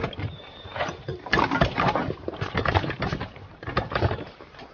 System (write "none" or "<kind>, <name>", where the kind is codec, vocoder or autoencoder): vocoder, BigVGAN v2